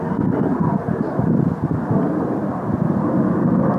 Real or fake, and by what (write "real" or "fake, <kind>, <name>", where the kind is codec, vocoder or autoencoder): real